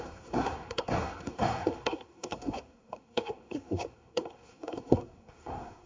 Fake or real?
fake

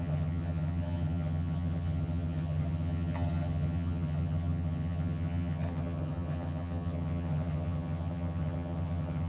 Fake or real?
fake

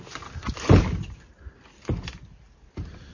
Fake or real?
real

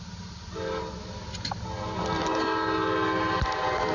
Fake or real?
real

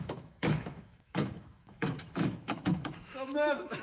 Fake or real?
fake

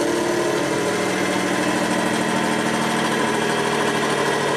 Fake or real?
real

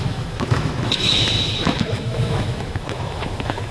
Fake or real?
fake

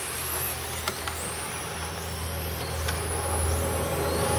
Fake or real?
real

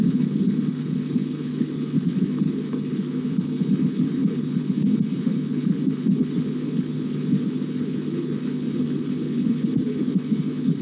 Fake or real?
fake